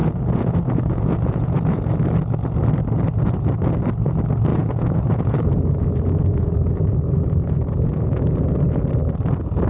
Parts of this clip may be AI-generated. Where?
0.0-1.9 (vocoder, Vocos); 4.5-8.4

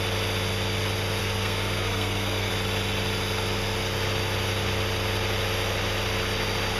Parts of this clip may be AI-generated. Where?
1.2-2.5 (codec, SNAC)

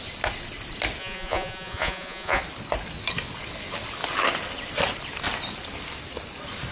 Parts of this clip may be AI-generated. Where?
1.0-2.4 (vocoder, Vocos)

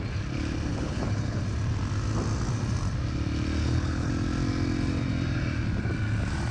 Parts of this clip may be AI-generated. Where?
0.7-1.4 (codec, HILCodec); 3.6-4.1

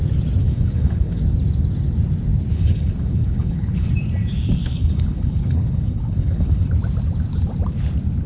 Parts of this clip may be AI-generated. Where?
0.4-1.2 (codec, HILCodec); 2.5-3.9; 4.6-6.7